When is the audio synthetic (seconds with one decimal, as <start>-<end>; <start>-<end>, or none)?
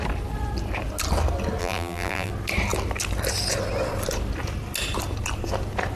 1.6-2.3